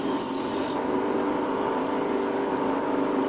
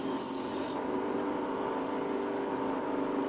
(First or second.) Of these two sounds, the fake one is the first